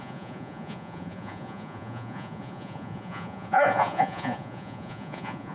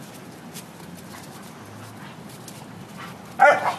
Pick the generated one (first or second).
first